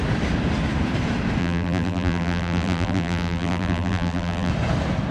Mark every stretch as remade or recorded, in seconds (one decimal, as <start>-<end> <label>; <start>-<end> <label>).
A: 0.0-1.4 recorded; 1.4-4.5 remade; 4.5-5.1 recorded